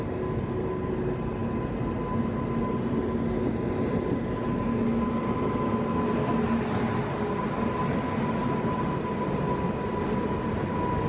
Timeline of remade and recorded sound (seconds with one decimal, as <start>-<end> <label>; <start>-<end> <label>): 0.0-11.1 recorded